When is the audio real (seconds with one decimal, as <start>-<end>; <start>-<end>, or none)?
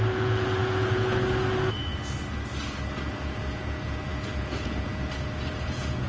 1.9-3.1